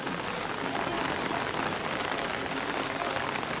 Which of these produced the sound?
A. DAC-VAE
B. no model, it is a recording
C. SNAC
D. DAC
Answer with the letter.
B